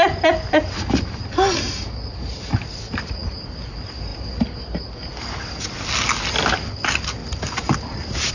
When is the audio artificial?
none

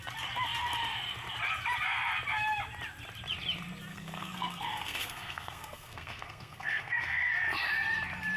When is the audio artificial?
3.9-7.3 (codec, SNAC)

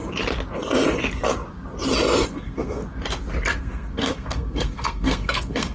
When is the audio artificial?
2.3-2.8 (codec, SNAC); 3.6-5.7

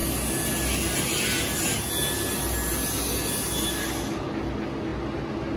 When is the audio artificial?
none

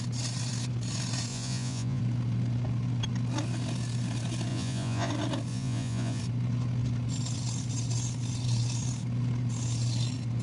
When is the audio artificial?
1.3-2.0 (vocoder, Vocos); 4.5-5.1; 5.5-6.2

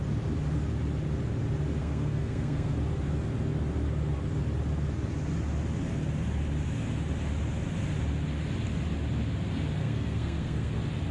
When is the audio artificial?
1.8-2.7 (codec, SNAC); 9.8-10.7

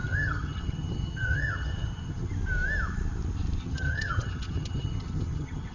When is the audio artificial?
0.0-2.3 (vocoder, HiFi-GAN); 3.6-5.7

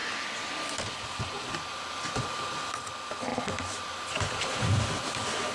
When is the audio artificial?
3.3-4.9 (vocoder, BigVGAN v2)